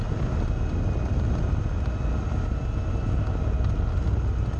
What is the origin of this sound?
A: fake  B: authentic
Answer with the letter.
B